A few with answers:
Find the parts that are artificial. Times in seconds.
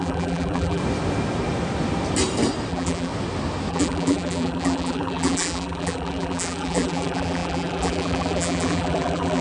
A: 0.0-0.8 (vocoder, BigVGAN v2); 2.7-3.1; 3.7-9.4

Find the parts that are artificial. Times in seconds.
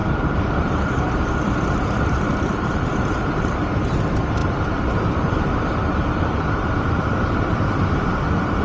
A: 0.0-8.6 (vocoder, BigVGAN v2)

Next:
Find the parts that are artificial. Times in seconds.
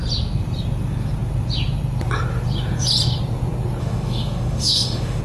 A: 3.8-5.2 (autoencoder, DAC-VAE)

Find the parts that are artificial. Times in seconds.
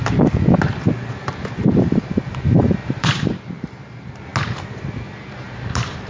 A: 0.0-4.3 (vocoder, BigVGAN v2); 5.2-6.1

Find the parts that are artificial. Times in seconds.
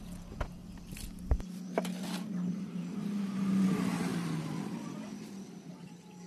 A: none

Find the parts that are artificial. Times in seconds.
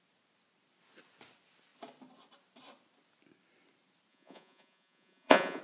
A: 4.1-5.6 (vocoder, Vocos)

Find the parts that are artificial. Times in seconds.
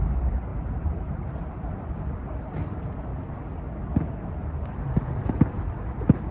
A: 0.5-2.0 (vocoder, BigVGAN v2); 3.1-3.6